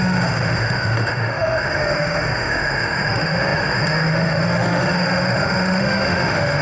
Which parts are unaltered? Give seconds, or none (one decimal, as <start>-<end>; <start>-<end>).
none